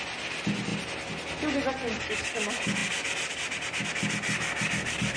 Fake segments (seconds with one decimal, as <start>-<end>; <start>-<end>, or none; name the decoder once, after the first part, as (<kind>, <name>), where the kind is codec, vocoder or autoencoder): none